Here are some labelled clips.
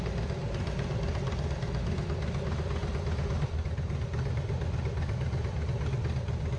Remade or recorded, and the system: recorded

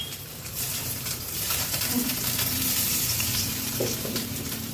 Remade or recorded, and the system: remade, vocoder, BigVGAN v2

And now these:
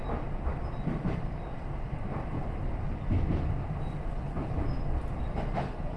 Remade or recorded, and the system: recorded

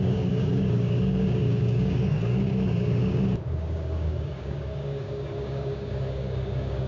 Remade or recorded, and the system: remade, codec, DAC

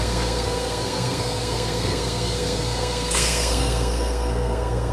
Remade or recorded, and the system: remade, codec, SNAC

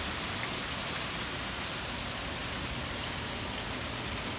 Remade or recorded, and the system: recorded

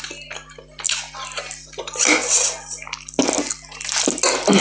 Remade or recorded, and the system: recorded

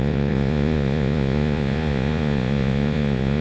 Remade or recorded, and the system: remade, vocoder, Vocos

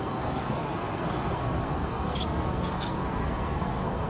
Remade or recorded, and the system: remade, codec, SNAC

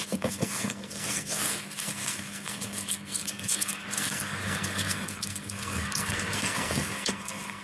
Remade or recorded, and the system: remade, codec, SNAC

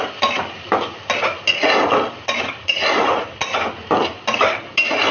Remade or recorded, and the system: recorded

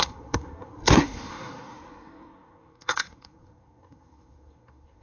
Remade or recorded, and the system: remade, codec, SNAC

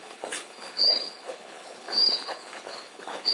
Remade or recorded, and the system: remade, codec, HILCodec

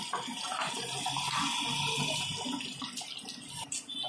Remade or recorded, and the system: recorded